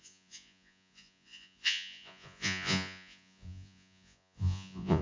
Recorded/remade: remade